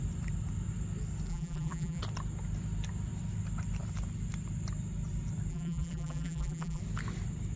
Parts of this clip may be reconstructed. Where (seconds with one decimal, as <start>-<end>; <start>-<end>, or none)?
1.3-2.0; 5.5-6.8